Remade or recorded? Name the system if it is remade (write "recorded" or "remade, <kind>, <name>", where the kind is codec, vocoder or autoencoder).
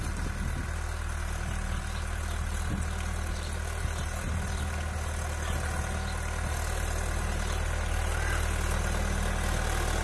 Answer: recorded